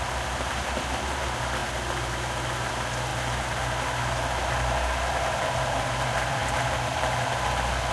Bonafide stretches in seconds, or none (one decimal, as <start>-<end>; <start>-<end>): 1.6-2.7; 6.4-7.9